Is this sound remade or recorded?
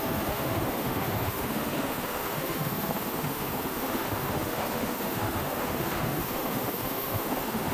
remade